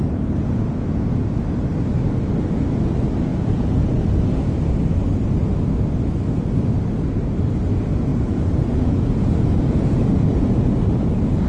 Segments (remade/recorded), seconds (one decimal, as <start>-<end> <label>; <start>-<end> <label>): 0.0-3.3 recorded; 3.3-4.0 remade; 4.0-8.1 recorded; 8.1-10.8 remade; 10.8-11.5 recorded